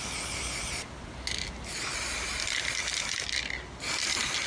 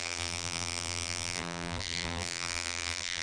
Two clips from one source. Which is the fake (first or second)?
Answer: second